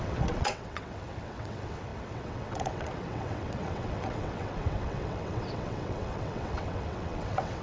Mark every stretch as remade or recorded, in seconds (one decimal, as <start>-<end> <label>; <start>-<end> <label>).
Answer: 0.0-7.6 remade

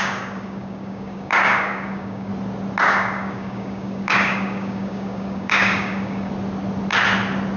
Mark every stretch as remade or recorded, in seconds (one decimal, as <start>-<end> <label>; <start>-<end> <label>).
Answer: 0.0-2.3 remade; 2.3-2.8 recorded; 2.8-6.3 remade; 6.3-7.6 recorded

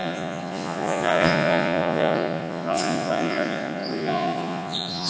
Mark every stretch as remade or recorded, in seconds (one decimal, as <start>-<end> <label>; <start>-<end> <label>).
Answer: 0.0-5.1 remade

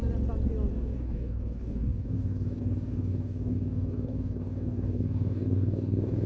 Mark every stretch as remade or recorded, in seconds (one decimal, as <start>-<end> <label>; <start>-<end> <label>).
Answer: 0.0-0.7 recorded; 0.7-6.3 remade

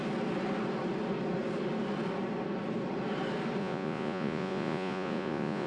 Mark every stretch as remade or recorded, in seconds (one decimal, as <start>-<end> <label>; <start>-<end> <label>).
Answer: 0.0-3.6 recorded; 3.6-5.7 remade

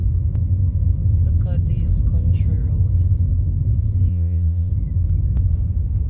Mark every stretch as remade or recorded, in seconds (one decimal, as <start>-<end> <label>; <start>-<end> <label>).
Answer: 0.0-4.1 recorded; 4.1-4.7 remade; 4.7-6.1 recorded